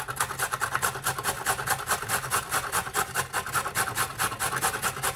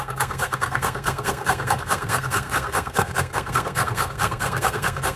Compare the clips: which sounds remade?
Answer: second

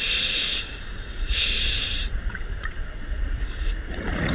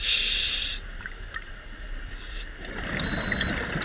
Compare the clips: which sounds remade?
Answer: first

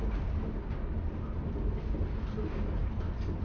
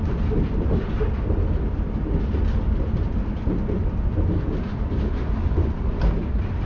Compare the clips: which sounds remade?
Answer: second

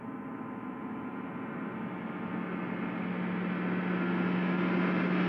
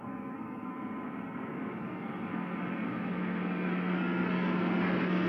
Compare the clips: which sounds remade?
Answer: second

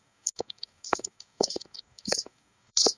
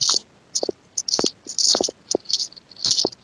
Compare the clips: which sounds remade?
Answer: first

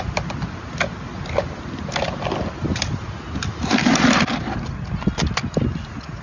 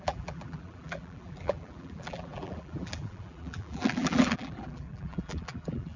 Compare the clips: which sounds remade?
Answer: second